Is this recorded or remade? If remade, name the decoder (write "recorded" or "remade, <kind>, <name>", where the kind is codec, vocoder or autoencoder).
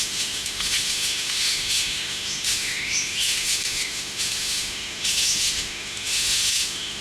remade, autoencoder, DAC-VAE